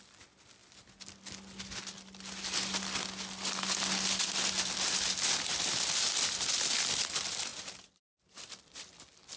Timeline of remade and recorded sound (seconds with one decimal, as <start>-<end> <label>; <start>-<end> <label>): 0.0-9.4 recorded